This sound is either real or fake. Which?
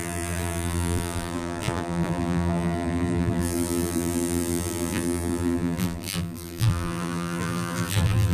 fake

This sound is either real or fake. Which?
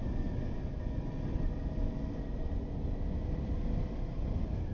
real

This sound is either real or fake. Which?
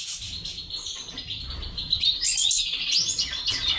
real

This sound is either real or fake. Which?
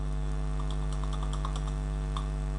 real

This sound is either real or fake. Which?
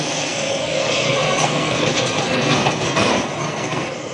fake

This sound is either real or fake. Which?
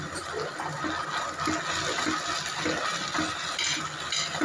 real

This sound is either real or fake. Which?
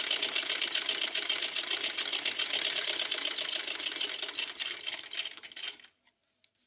real